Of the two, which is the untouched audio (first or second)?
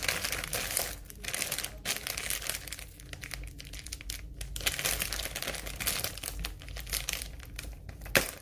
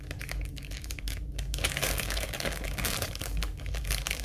first